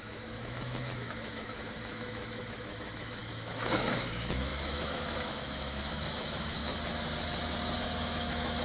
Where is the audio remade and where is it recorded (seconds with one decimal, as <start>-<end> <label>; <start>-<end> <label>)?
0.0-6.6 remade; 6.6-7.8 recorded; 7.8-8.6 remade